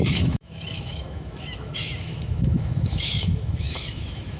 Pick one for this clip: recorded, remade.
remade